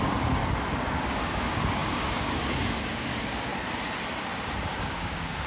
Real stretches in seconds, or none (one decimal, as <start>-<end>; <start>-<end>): 0.4-0.9; 3.5-4.8